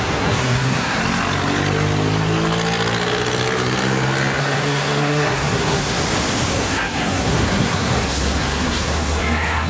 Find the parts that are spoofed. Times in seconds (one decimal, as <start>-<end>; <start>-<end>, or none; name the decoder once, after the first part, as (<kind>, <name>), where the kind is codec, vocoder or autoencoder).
0.0-1.0 (codec, SNAC); 4.4-6.0; 6.5-9.7